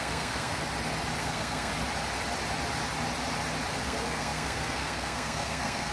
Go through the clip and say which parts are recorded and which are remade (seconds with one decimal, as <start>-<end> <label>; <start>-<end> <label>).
0.0-0.6 remade; 0.6-1.2 recorded; 1.2-1.7 remade; 1.7-3.8 recorded; 3.8-5.9 remade